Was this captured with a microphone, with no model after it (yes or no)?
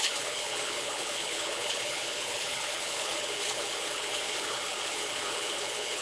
no